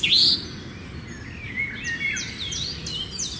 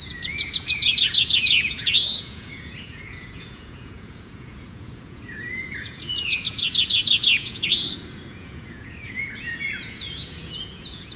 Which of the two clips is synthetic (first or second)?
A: second